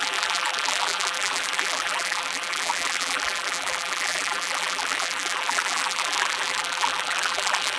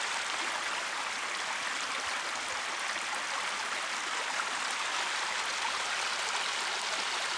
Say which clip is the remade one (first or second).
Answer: first